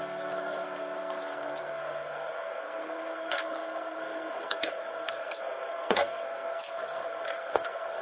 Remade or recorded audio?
remade